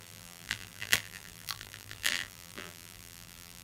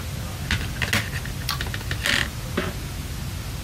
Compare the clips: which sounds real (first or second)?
second